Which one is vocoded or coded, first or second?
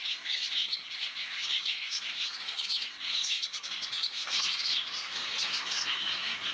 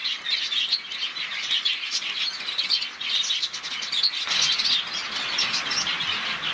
first